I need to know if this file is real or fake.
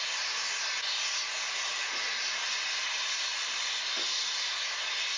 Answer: real